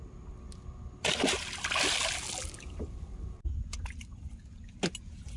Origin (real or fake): real